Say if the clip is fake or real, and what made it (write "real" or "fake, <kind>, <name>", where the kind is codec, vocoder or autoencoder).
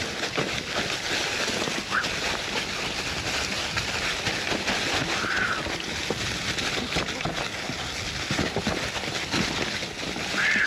real